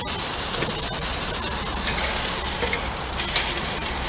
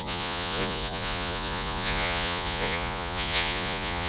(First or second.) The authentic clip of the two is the first